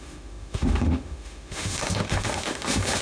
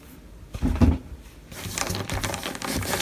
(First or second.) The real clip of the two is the second